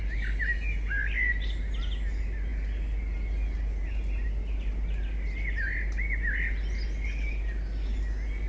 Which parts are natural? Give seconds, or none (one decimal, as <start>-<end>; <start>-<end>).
0.0-8.5